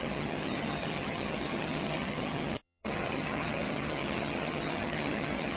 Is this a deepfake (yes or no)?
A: yes